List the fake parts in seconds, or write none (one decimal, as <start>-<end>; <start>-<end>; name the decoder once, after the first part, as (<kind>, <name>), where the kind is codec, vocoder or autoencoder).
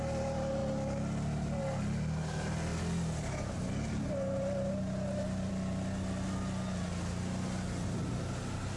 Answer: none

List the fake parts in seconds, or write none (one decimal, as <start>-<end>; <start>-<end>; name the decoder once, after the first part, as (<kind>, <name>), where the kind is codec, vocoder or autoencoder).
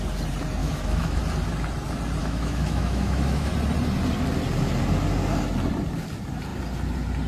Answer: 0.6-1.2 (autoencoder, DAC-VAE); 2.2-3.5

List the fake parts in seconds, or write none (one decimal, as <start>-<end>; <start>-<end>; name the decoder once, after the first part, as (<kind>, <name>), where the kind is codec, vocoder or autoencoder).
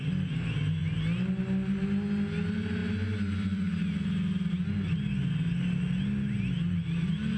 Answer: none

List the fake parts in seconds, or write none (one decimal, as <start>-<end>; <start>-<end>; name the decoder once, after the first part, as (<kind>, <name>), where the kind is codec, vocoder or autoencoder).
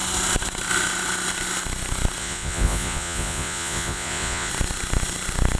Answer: 2.2-4.5 (vocoder, Vocos)